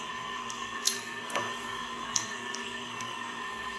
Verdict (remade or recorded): remade